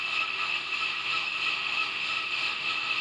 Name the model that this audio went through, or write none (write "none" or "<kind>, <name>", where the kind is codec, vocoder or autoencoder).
autoencoder, DAC-VAE